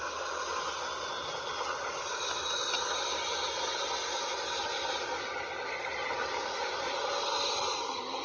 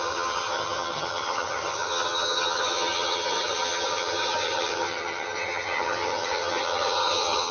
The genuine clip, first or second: first